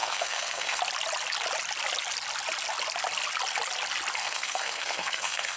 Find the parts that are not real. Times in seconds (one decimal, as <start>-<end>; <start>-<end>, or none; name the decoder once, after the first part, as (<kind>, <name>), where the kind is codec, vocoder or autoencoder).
0.0-0.8 (codec, SNAC); 4.2-5.6